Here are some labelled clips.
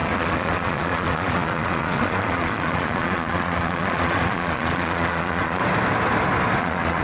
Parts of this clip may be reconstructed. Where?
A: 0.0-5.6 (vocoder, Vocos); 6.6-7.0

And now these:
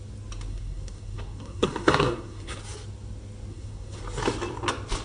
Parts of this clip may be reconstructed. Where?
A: 0.5-2.6 (codec, SNAC); 3.5-4.0

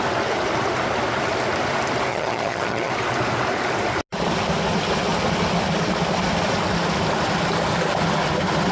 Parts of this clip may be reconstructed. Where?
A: 2.1-2.9 (vocoder, HiFi-GAN)